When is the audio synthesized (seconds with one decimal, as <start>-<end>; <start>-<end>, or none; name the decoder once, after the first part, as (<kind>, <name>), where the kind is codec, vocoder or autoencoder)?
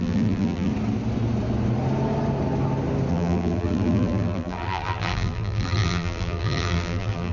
0.0-0.7 (vocoder, BigVGAN v2); 3.1-7.3